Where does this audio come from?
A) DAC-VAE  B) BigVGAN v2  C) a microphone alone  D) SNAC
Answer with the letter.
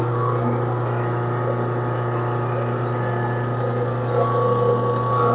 C